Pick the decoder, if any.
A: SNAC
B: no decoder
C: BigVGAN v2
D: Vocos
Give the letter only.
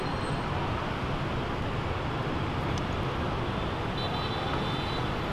B